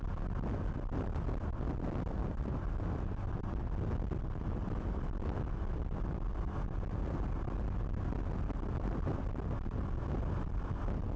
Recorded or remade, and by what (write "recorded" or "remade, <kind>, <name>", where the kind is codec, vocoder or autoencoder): recorded